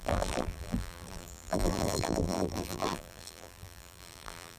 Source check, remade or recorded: remade